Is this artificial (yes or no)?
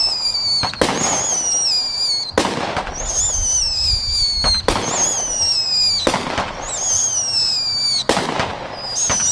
no